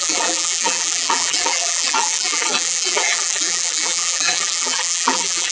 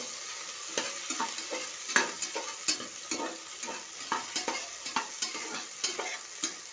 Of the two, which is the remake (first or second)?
first